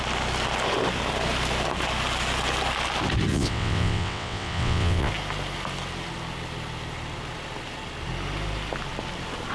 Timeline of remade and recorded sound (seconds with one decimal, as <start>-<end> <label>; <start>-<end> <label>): 0.0-3.3 recorded; 3.3-5.1 remade; 5.1-9.5 recorded